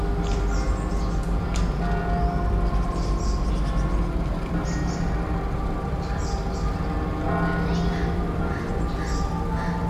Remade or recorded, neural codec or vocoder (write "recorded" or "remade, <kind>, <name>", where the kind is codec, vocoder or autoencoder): recorded